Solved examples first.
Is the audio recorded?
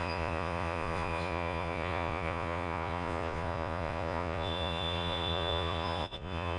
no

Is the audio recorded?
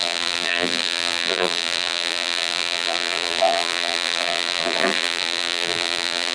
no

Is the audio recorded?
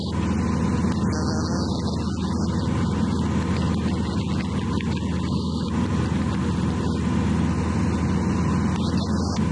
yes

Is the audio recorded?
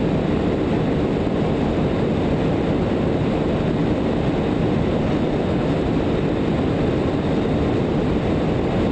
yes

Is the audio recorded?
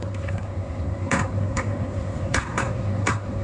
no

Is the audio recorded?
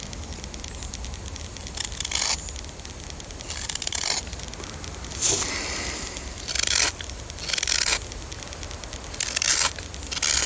yes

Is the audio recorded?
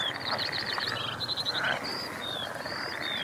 yes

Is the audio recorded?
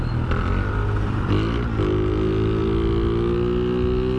yes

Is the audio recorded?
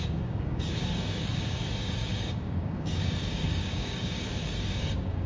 no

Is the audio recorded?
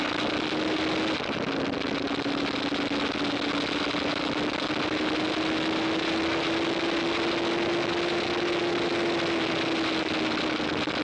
yes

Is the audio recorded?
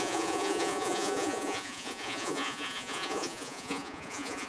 no